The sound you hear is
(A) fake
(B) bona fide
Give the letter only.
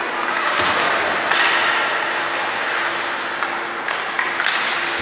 B